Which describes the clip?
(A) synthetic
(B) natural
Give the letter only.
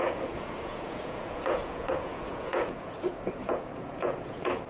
A